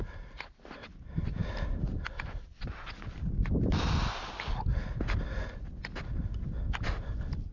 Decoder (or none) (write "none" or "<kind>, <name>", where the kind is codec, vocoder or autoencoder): none